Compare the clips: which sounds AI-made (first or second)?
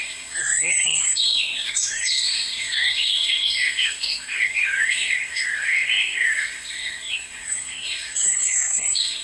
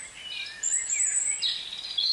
first